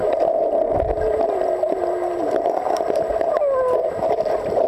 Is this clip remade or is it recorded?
recorded